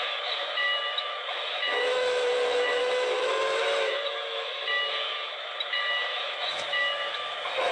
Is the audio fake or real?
fake